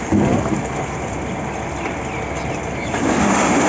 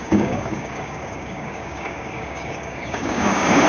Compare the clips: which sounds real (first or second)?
first